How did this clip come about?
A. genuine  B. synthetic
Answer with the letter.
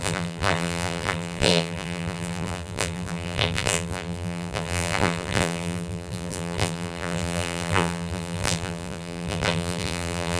B